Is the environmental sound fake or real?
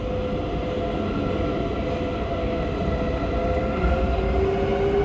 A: real